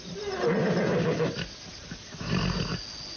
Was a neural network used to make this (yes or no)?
no